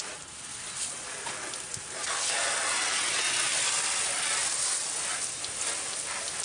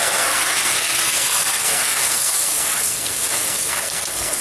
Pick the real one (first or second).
first